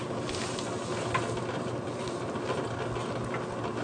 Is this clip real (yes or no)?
yes